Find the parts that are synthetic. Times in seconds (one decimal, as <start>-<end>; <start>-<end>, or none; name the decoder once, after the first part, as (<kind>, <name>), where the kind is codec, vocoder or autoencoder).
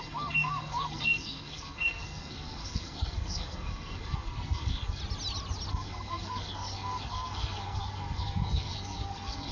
0.0-5.0 (codec, SNAC); 5.7-9.5